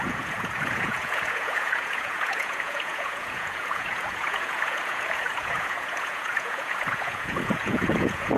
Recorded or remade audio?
remade